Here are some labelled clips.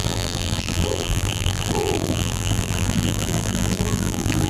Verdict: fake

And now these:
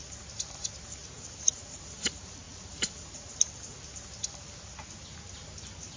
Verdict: real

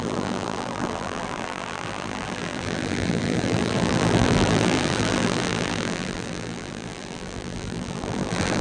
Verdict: fake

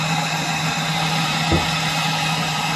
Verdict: real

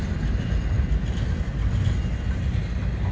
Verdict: real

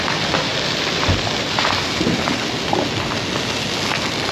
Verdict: real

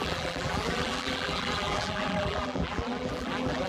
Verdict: fake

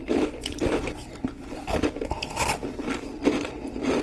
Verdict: real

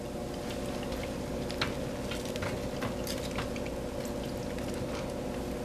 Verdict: real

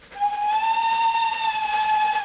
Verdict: real